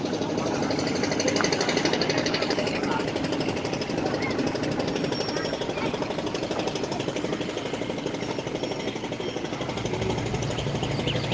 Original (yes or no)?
yes